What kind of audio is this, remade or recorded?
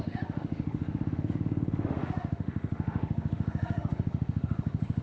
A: remade